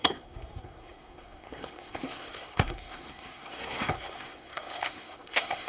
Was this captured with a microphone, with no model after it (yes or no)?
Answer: no